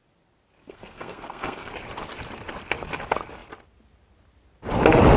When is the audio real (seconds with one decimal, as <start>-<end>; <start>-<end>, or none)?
0.0-0.6; 1.7-5.2